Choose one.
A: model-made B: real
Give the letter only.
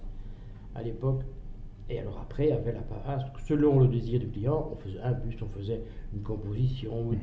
B